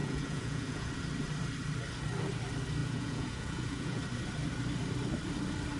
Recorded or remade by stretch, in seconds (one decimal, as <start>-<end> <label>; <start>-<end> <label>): 0.0-0.9 remade; 0.9-2.8 recorded; 2.8-4.0 remade; 4.0-5.8 recorded